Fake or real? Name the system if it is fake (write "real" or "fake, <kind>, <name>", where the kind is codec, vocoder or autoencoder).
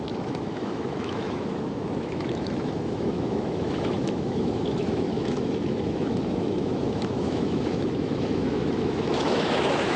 fake, autoencoder, DAC-VAE